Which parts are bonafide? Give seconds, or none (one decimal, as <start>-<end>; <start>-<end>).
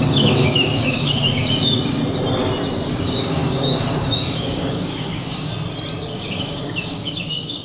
2.0-2.9; 5.5-6.1